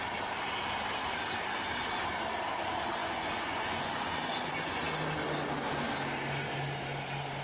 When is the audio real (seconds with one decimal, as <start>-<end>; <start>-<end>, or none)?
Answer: 0.0-3.0; 4.8-7.4